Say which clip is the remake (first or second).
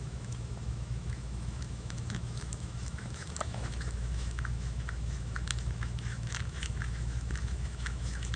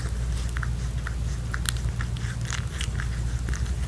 first